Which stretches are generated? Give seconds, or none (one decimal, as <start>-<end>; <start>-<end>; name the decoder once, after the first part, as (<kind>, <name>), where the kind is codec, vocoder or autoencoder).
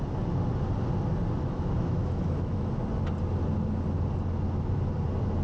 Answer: 1.4-2.8 (autoencoder, DAC-VAE)